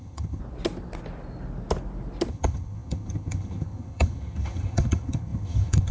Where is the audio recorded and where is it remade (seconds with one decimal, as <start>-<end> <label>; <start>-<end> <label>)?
0.0-0.4 remade; 0.4-2.3 recorded; 2.3-5.9 remade

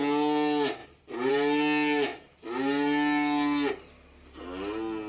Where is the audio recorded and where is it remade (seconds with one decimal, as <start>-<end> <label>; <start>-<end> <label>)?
0.0-5.1 recorded

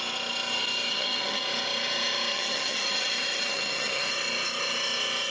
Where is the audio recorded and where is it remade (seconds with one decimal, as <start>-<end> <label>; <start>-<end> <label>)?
0.0-0.9 recorded; 0.9-1.4 remade; 1.4-2.3 recorded; 2.3-4.1 remade; 4.1-5.3 recorded

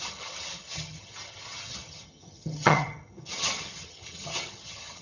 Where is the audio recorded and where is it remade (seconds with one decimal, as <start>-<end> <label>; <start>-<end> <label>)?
0.0-5.0 remade

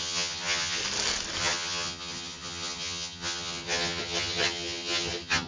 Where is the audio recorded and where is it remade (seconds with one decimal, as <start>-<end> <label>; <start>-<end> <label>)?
0.0-0.8 remade; 0.8-1.4 recorded; 1.4-5.5 remade

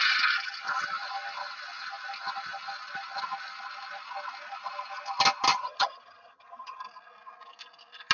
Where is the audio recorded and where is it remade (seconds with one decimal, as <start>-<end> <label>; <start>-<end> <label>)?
0.0-5.5 recorded; 5.5-6.8 remade; 6.8-8.1 recorded